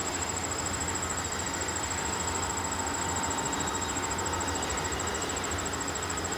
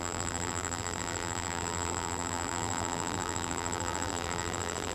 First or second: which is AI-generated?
second